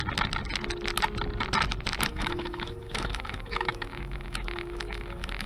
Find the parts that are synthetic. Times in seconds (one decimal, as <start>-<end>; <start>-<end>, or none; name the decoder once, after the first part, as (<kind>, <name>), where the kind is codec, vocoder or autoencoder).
2.1-5.5 (autoencoder, DAC-VAE)